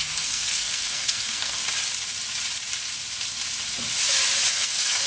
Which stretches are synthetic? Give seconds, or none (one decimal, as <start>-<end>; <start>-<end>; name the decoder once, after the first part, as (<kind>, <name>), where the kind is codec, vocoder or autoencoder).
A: 0.0-1.6 (codec, SNAC); 4.5-5.1